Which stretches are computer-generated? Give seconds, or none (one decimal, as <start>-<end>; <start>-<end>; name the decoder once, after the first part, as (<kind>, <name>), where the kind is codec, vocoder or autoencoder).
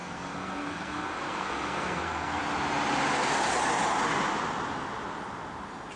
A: 0.0-2.4 (codec, SNAC)